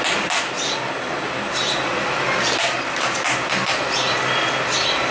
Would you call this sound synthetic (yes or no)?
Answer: no